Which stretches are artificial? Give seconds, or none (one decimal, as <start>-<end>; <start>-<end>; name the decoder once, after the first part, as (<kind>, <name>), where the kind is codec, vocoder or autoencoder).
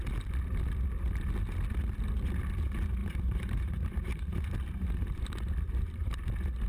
3.0-6.0 (vocoder, BigVGAN v2)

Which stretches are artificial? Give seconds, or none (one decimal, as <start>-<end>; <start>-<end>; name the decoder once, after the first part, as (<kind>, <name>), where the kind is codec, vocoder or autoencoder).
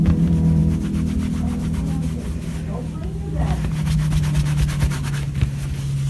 none